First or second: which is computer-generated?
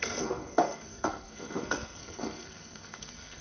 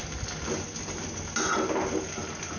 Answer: first